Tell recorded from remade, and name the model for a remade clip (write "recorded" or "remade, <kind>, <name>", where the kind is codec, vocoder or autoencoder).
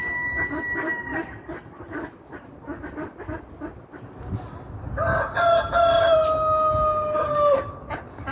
recorded